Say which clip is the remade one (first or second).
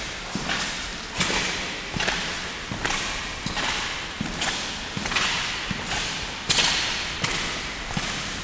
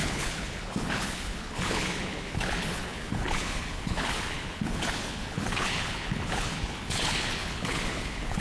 second